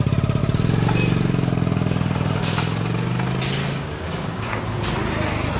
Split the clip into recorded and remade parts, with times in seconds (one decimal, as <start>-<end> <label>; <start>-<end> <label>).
0.0-3.6 recorded; 3.6-4.6 remade; 4.6-5.6 recorded